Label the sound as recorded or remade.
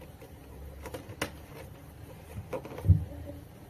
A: recorded